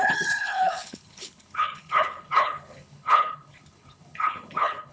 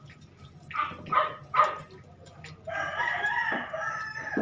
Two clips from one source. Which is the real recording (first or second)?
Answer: second